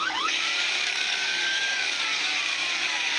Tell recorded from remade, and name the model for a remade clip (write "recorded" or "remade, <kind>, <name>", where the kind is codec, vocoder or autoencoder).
remade, codec, DAC